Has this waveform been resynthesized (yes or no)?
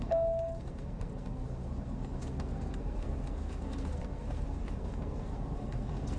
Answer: yes